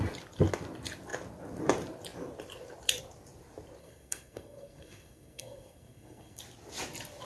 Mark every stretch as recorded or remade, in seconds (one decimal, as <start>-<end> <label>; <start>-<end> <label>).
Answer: 0.0-3.8 recorded; 3.8-6.4 remade; 6.4-7.3 recorded